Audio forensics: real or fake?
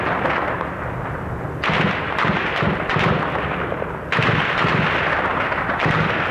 real